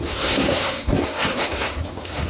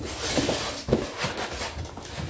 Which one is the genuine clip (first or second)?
second